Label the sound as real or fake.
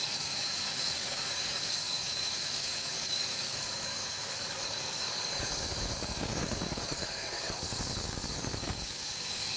fake